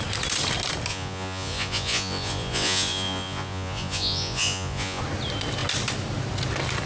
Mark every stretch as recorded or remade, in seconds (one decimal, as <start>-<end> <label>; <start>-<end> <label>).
0.0-0.9 recorded; 0.9-5.0 remade; 5.0-6.9 recorded